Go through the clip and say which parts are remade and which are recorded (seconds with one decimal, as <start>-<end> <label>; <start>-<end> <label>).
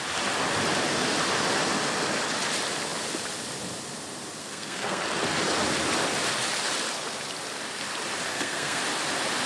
0.0-4.4 recorded; 4.4-5.0 remade; 5.0-8.3 recorded; 8.3-8.8 remade; 8.8-9.5 recorded